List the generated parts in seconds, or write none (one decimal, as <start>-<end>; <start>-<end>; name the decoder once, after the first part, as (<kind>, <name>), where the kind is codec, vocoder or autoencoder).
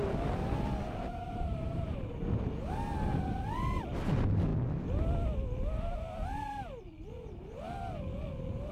1.2-2.0 (vocoder, BigVGAN v2)